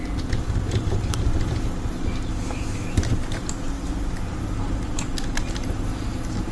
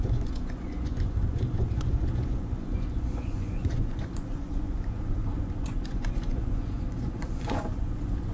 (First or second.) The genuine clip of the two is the first